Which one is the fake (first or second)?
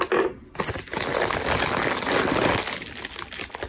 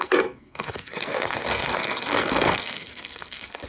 second